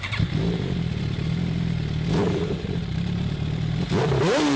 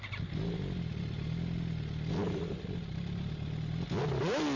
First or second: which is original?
second